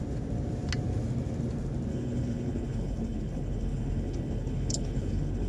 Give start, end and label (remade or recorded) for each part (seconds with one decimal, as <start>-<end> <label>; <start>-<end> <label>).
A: 0.0-1.9 recorded; 1.9-5.5 remade